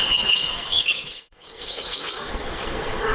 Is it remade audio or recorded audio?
remade